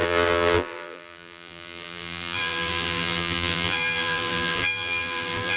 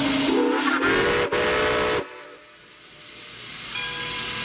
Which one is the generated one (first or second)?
first